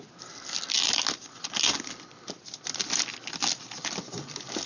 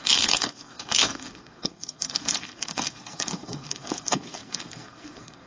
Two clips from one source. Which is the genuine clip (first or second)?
first